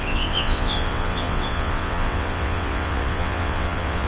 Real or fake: fake